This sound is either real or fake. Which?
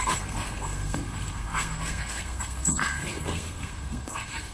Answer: fake